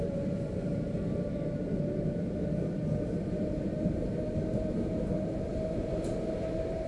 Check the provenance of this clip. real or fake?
fake